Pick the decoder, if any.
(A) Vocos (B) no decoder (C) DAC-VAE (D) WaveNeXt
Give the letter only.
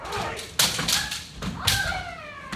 B